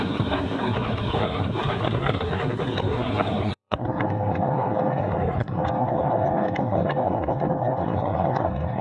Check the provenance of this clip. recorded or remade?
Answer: remade